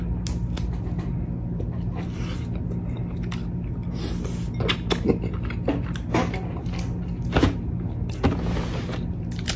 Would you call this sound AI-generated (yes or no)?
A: no